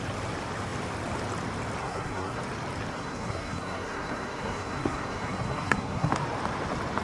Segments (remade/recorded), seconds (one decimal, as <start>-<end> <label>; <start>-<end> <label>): 0.0-1.8 recorded; 1.8-2.4 remade; 2.4-2.9 recorded; 2.9-6.1 remade; 6.1-7.0 recorded